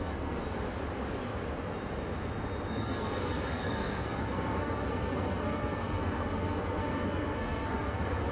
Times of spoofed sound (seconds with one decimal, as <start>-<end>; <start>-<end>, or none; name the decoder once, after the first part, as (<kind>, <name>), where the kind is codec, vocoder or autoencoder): 0.0-0.4 (codec, SNAC); 2.7-8.3